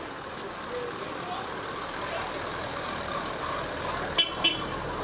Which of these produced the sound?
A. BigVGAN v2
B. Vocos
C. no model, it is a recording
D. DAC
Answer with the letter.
C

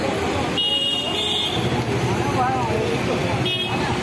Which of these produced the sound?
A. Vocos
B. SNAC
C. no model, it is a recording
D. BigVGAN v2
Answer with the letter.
C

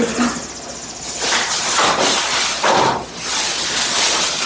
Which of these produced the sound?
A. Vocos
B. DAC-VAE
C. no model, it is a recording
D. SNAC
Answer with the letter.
C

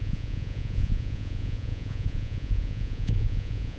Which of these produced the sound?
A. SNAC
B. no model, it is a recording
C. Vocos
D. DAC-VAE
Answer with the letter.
C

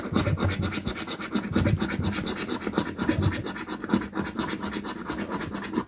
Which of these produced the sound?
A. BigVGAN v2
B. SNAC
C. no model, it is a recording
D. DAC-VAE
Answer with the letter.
C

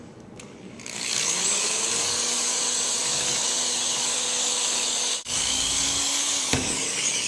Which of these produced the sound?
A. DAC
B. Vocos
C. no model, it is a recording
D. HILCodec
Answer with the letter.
A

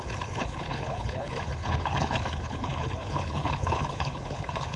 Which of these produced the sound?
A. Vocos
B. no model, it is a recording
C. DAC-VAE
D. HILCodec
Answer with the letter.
D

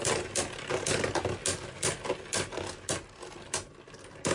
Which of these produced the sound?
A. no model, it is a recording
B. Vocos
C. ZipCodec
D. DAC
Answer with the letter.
A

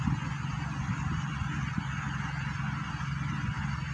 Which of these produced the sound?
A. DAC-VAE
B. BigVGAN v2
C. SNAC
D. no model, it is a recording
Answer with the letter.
D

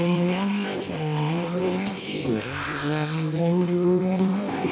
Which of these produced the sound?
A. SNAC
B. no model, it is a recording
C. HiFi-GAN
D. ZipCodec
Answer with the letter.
D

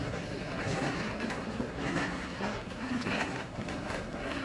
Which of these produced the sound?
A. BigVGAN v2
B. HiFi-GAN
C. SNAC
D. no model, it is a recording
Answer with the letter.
C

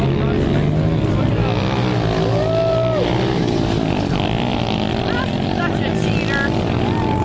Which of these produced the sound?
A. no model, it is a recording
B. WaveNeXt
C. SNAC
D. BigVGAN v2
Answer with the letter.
A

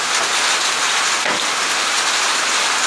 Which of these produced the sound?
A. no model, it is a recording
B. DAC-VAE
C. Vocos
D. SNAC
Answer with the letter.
A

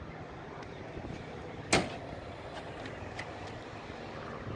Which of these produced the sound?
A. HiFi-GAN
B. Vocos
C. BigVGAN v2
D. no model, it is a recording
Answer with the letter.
D